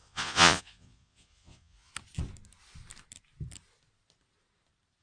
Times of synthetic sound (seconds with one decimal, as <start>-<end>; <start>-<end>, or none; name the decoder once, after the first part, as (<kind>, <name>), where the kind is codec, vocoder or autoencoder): 0.0-1.9 (vocoder, Vocos)